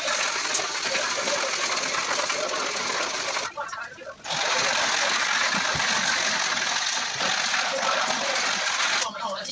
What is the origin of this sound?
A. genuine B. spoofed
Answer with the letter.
A